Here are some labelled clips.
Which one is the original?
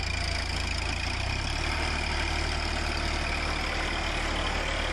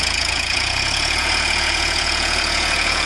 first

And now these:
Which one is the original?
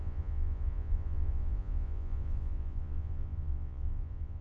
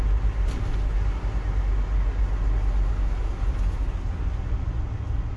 second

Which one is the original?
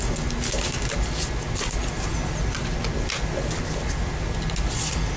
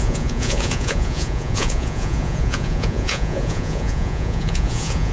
first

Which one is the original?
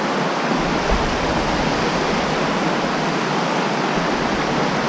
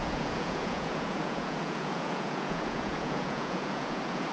first